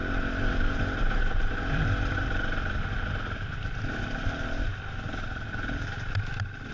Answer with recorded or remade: remade